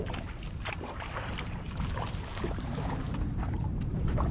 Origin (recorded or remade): remade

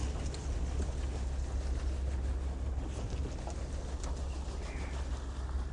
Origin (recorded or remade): recorded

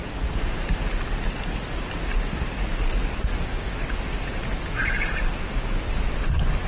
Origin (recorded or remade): recorded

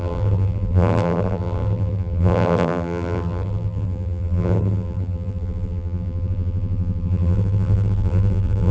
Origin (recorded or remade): remade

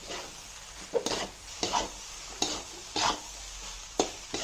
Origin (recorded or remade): recorded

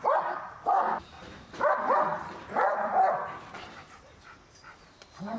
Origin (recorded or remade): remade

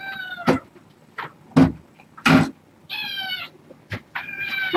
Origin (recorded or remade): recorded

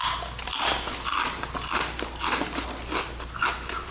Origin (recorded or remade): recorded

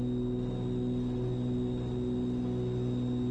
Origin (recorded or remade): recorded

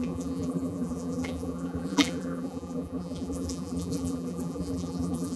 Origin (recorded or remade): remade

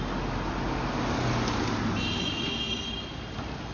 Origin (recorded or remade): recorded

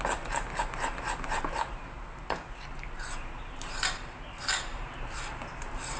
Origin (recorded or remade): recorded